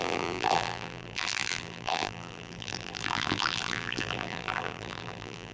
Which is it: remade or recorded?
remade